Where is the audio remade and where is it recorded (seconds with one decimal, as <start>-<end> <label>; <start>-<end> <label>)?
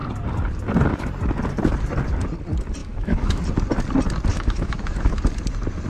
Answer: 0.0-2.8 recorded; 2.8-3.4 remade; 3.4-4.3 recorded; 4.3-5.2 remade; 5.2-5.9 recorded